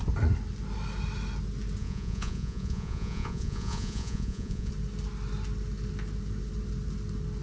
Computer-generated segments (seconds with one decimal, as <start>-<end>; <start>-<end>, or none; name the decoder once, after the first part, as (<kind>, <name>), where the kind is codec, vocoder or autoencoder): 1.8-4.7 (vocoder, Vocos)